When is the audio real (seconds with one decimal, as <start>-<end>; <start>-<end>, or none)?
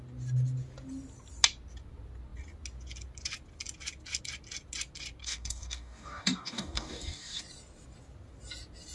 0.0-5.2; 7.4-8.9